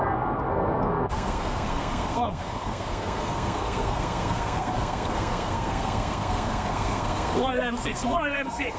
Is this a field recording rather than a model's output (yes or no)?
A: no